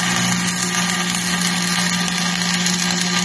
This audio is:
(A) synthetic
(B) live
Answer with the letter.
B